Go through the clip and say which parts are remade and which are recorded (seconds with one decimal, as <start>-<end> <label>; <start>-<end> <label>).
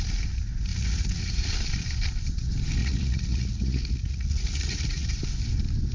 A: 0.0-0.7 recorded; 0.7-1.4 remade; 1.4-2.8 recorded; 2.8-5.2 remade; 5.2-5.9 recorded